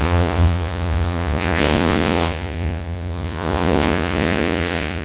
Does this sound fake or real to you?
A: fake